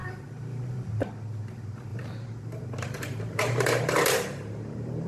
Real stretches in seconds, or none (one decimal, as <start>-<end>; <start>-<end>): 0.0-1.9